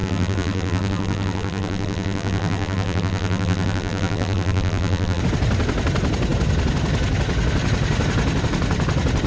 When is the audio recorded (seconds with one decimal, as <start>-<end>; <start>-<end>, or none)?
5.2-9.3